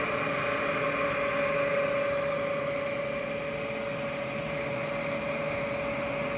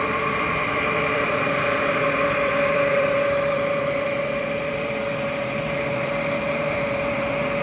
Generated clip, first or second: second